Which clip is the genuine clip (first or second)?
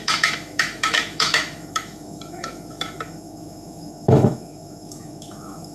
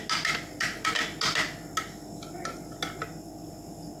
second